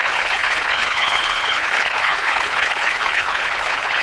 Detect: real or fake fake